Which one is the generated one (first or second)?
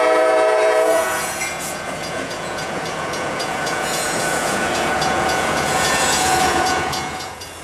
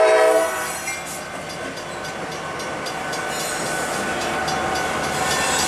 first